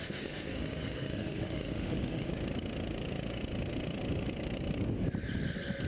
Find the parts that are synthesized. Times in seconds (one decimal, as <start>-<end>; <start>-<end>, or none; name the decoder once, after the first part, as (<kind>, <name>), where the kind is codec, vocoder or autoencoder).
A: 0.0-2.3 (autoencoder, DAC-VAE)